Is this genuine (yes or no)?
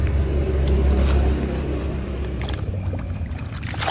yes